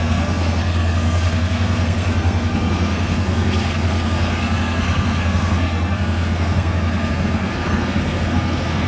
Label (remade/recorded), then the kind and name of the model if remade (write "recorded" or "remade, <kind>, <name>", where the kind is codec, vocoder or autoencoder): remade, codec, SNAC